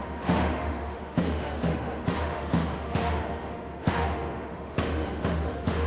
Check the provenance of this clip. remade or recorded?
remade